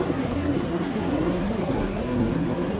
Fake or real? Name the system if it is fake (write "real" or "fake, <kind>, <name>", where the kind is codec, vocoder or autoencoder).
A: fake, codec, SNAC